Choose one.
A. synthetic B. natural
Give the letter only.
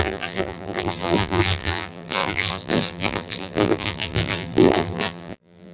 A